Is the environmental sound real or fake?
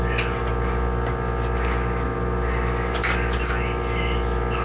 real